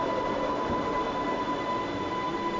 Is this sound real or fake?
real